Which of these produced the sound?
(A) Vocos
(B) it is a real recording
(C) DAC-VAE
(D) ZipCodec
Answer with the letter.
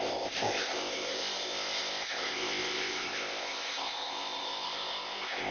D